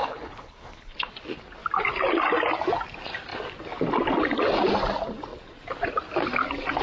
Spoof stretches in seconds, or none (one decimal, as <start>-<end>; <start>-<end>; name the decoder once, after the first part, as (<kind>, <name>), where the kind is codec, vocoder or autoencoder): 0.0-1.1 (codec, HILCodec)